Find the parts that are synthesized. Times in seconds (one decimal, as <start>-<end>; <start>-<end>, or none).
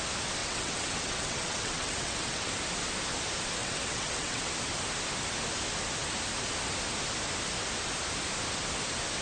0.4-2.5; 3.6-4.5